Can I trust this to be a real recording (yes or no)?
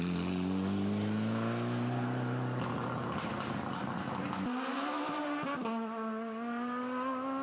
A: yes